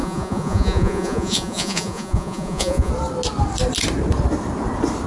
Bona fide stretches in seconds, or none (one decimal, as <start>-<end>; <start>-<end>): 2.9-5.1